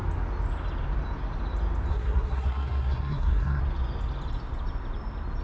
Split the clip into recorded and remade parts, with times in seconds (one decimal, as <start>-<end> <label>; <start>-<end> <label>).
0.0-1.9 recorded; 1.9-3.6 remade; 3.6-5.4 recorded